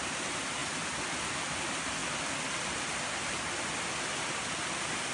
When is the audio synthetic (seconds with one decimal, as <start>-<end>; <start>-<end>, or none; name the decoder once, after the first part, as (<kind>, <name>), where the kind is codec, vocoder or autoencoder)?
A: 0.0-0.6 (vocoder, BigVGAN v2); 1.5-2.0